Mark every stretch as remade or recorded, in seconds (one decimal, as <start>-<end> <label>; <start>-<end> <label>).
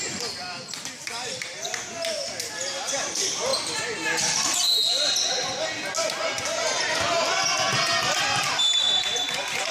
0.0-9.7 recorded